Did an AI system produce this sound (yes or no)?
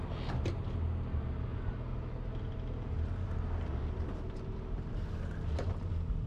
no